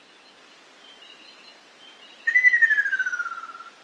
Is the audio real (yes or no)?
yes